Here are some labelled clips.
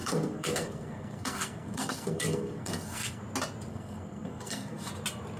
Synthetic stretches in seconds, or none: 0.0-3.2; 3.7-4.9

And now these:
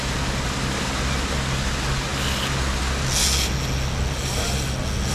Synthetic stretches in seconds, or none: none

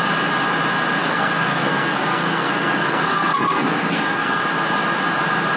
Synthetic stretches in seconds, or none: 1.0-4.4